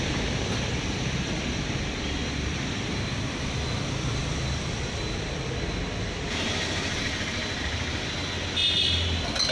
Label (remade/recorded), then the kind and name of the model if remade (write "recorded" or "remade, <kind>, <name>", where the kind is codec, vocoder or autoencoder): remade, vocoder, BigVGAN v2